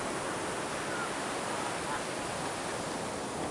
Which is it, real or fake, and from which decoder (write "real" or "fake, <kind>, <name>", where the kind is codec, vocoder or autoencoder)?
real